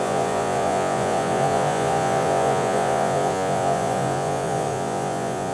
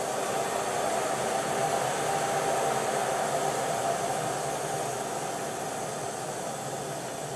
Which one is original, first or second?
second